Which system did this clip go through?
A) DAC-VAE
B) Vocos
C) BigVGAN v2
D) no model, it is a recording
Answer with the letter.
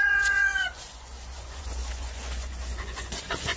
B